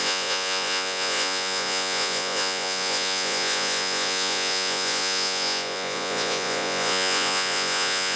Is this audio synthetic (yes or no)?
yes